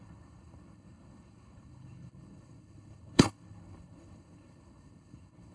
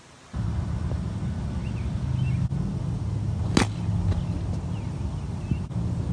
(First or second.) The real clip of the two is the second